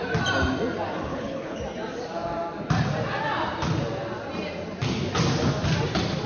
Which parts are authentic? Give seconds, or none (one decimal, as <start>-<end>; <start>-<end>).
0.0-1.1; 1.6-6.3